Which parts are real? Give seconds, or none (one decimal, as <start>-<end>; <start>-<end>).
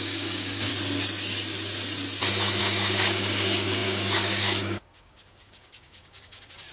0.7-2.6